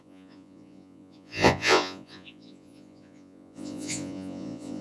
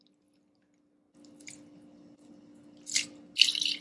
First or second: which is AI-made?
first